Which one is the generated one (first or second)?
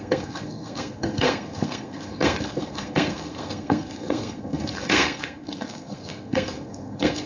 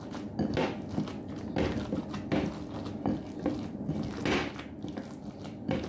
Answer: first